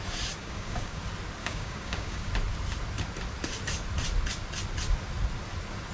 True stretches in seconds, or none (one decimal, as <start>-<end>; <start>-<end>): 0.0-0.4; 1.0-1.4; 2.3-5.9